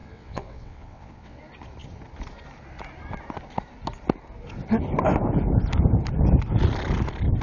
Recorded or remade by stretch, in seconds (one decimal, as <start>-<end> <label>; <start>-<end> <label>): 0.0-1.4 remade; 1.4-7.4 recorded